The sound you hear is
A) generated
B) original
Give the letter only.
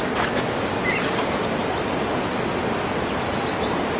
B